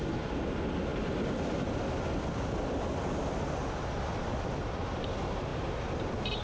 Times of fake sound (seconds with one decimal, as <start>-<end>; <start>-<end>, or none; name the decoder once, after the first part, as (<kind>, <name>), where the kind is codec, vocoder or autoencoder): none